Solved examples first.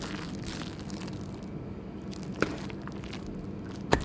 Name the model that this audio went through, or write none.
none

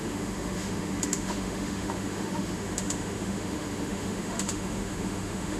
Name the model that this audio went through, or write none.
autoencoder, DAC-VAE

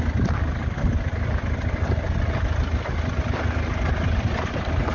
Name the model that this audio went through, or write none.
none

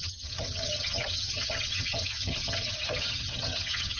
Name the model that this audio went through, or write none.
vocoder, HiFi-GAN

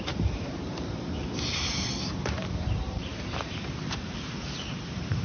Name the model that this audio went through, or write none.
vocoder, BigVGAN v2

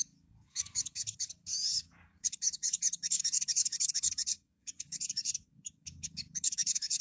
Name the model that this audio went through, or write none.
codec, DAC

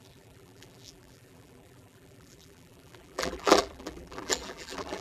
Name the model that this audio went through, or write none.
vocoder, BigVGAN v2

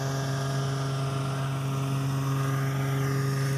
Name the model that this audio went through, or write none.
none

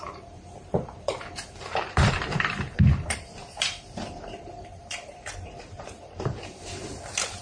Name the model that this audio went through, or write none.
vocoder, BigVGAN v2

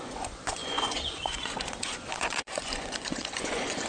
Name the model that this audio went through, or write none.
vocoder, Vocos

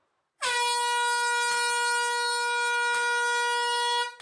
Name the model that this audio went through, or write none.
none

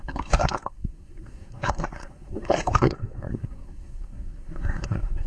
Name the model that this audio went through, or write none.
codec, SNAC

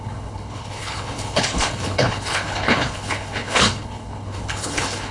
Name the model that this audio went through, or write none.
codec, HILCodec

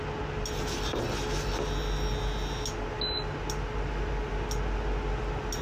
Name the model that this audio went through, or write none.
none